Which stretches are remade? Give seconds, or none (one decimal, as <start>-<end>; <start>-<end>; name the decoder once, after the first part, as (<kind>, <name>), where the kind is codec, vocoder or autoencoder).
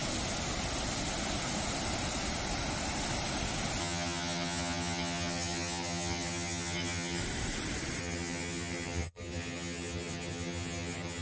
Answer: 3.8-7.2 (vocoder, HiFi-GAN); 8.0-11.2